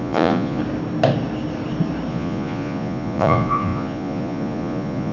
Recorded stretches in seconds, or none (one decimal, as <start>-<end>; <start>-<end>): 0.6-2.1